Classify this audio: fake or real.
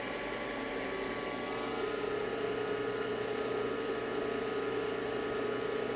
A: real